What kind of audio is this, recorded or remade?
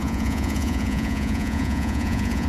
remade